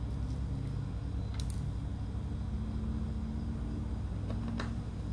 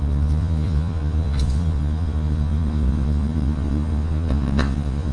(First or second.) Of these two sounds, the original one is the first